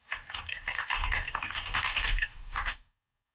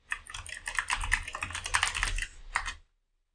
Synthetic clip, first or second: first